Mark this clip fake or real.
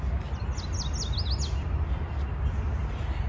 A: real